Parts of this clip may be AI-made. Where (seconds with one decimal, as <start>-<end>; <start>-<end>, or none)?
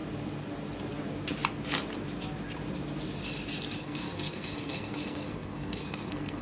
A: 3.8-6.4